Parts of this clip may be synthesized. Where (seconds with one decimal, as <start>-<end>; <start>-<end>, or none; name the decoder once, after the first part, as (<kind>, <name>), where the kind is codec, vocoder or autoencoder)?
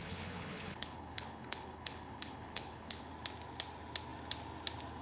0.0-3.0 (codec, HILCodec)